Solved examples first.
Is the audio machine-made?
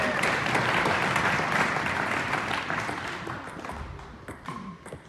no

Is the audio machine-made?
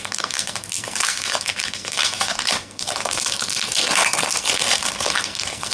yes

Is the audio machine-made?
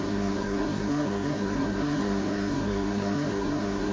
yes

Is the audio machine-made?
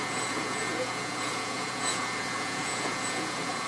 yes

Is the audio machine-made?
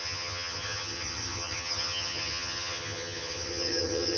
yes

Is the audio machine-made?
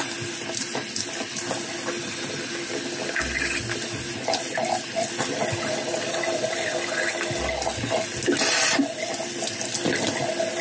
no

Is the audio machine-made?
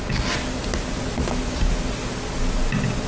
no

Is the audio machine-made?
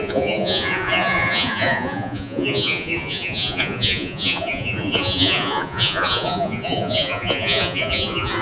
yes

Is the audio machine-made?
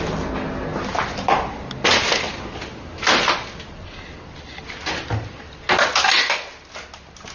no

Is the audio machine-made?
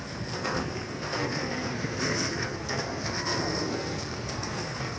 yes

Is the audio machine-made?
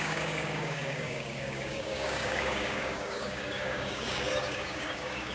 yes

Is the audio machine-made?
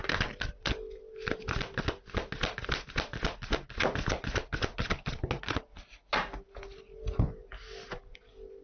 no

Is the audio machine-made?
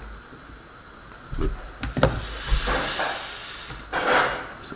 no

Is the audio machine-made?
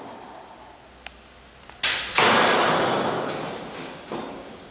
no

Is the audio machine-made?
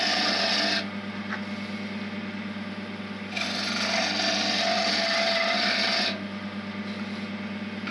no